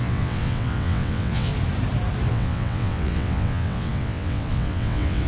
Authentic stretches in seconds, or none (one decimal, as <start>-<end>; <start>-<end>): 1.5-2.3